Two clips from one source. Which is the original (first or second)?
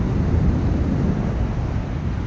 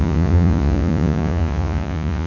first